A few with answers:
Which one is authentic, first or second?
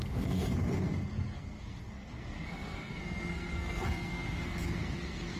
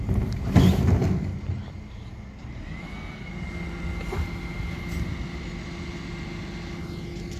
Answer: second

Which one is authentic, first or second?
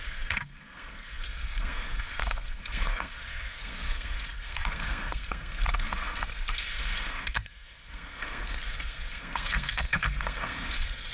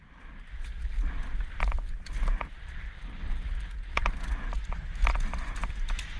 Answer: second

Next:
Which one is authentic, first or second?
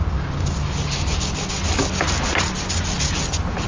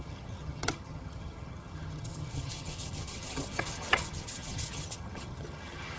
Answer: first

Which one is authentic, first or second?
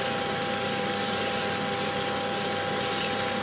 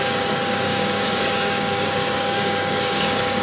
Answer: first